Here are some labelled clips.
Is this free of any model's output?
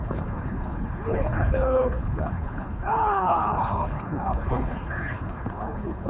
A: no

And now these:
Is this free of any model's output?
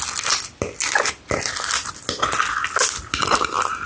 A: yes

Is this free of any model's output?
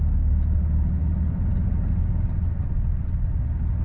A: yes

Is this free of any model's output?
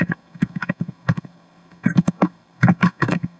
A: no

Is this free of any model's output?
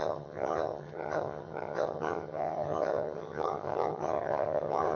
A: no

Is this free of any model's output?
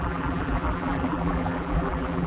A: no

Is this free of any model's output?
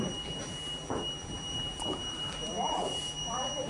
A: no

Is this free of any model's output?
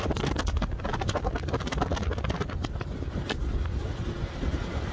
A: yes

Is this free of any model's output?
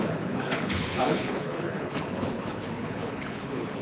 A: no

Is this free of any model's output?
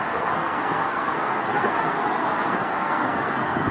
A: no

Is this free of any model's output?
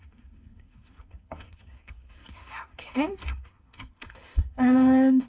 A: no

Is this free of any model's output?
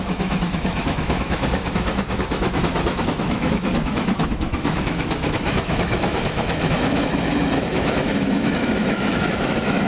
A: no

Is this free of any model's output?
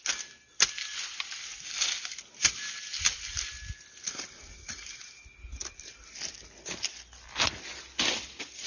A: yes